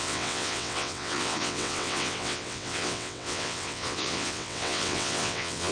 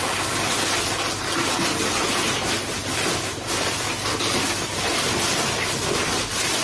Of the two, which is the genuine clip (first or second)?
second